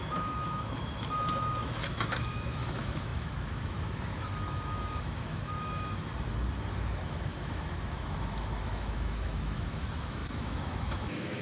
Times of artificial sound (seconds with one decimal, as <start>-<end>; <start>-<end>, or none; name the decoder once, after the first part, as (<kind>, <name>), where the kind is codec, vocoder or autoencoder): 0.0-6.1 (autoencoder, DAC-VAE); 6.7-11.4